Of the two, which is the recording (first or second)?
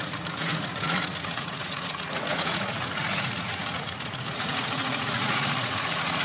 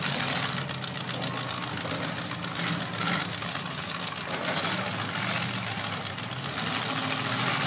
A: second